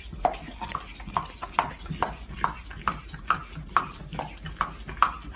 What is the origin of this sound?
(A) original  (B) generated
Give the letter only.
A